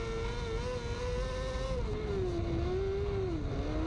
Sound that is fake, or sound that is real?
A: real